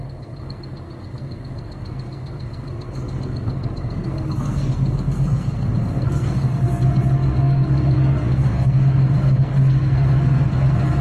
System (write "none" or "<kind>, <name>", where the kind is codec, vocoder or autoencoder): codec, SNAC